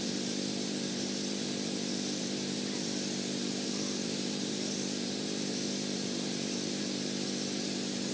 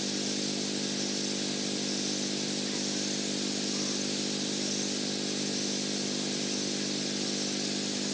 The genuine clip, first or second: second